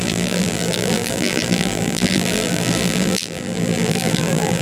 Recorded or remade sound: remade